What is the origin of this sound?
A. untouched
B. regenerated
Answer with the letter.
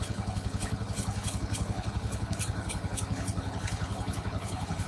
B